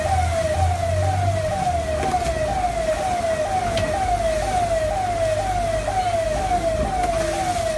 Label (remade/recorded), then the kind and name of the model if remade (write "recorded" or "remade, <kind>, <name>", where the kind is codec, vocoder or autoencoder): recorded